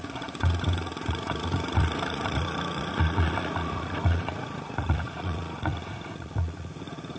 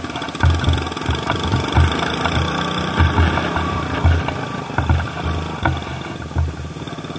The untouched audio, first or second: second